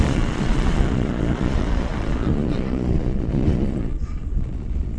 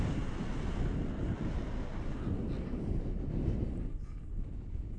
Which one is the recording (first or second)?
second